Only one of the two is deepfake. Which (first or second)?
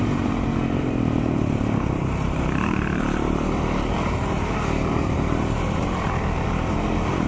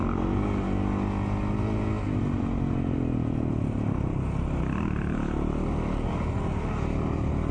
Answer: first